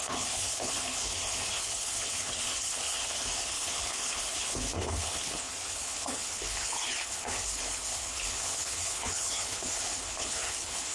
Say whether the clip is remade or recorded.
remade